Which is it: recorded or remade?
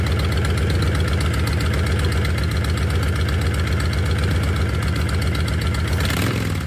recorded